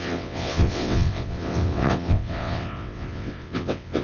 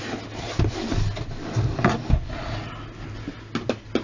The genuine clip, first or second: second